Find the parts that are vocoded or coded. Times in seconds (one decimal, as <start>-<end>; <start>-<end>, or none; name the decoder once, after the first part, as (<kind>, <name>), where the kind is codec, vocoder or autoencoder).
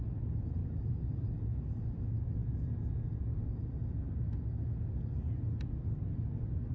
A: 0.6-1.3 (vocoder, BigVGAN v2)